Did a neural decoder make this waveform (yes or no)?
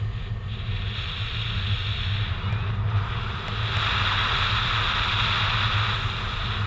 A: no